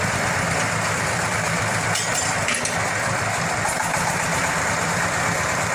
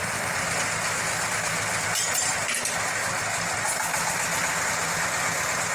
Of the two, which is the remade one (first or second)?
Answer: first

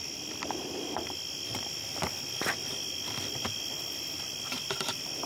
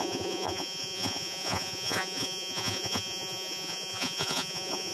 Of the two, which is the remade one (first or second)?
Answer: second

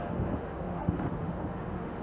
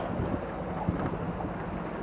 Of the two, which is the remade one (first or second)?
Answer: first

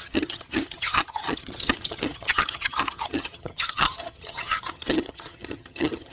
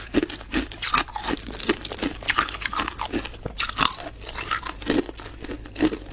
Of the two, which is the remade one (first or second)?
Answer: first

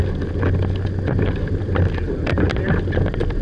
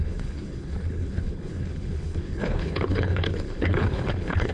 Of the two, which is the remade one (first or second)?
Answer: second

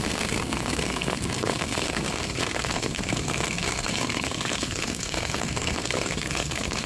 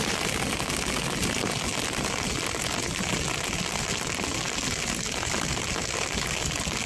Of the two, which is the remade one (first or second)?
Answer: first